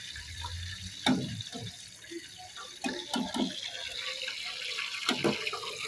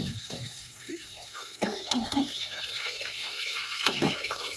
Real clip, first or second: first